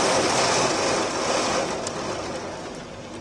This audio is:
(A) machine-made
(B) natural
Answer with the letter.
B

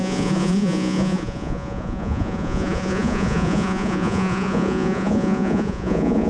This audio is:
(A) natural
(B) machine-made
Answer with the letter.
B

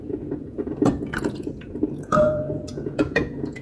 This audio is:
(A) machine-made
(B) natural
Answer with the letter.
A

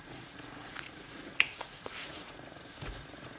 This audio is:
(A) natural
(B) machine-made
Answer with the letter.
B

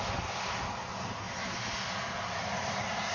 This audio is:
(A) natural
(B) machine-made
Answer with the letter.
A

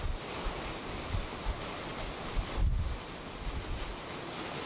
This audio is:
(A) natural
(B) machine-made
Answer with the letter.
A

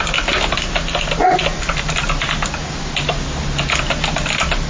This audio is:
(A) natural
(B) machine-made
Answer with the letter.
A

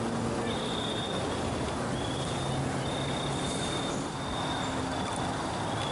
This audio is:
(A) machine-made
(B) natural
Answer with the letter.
B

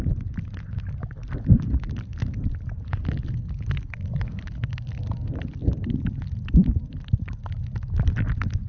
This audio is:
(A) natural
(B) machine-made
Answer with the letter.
A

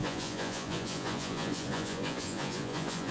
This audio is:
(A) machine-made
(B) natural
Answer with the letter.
A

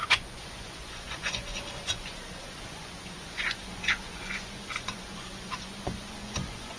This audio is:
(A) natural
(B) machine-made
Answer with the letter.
B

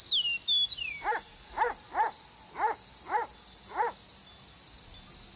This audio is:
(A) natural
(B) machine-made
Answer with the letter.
A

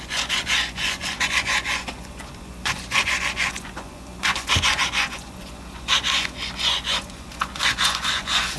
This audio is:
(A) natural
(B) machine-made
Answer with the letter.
B